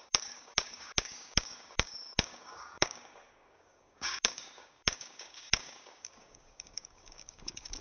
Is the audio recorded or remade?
remade